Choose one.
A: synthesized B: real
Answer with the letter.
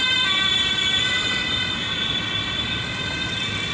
B